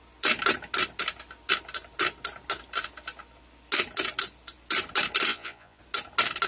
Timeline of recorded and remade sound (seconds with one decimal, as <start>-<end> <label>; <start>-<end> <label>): 0.0-5.3 recorded; 5.3-5.8 remade; 5.8-6.5 recorded